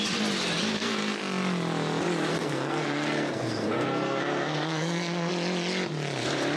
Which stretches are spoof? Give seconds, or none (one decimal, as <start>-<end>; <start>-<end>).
0.7-1.2; 2.3-5.3